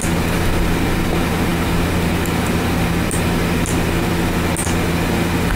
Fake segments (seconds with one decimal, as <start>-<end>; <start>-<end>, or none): none